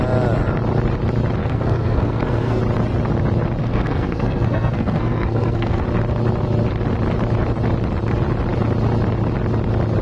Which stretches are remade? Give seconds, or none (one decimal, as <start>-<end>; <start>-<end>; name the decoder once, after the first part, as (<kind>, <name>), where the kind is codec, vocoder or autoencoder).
1.4-2.6 (codec, SNAC); 3.6-5.8